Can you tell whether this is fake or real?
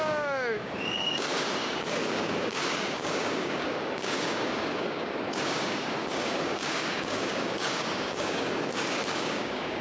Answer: fake